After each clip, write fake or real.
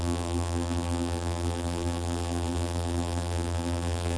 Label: fake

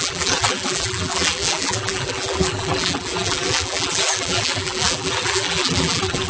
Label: fake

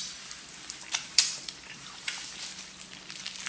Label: fake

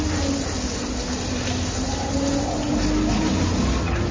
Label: real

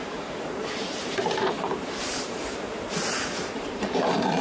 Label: fake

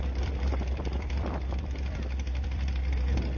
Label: fake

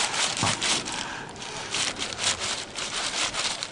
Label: fake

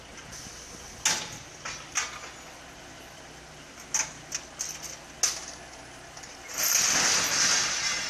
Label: real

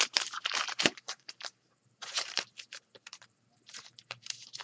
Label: fake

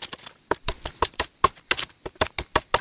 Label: real